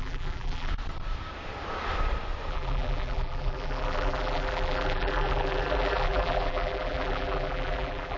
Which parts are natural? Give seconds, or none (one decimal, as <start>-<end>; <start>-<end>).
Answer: 0.7-2.5